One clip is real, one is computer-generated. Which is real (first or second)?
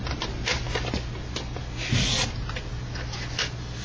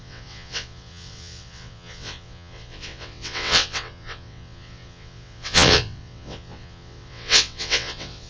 first